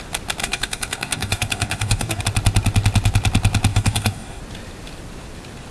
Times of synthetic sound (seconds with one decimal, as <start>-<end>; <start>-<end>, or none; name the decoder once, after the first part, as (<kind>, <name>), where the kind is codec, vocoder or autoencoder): 0.4-2.2 (codec, DAC); 3.7-4.4